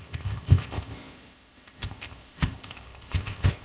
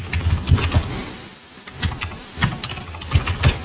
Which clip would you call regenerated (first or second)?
first